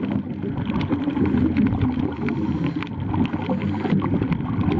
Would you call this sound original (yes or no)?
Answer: yes